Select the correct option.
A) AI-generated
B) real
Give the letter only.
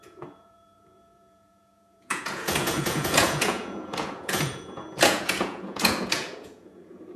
A